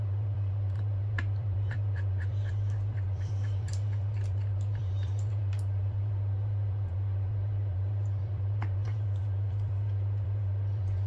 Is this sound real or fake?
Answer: fake